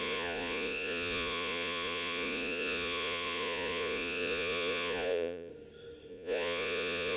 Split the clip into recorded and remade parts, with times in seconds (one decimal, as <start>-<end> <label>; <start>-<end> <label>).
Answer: 0.0-5.5 remade; 5.5-6.1 recorded; 6.1-7.2 remade